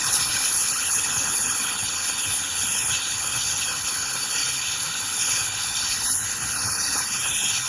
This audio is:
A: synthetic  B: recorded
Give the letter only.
A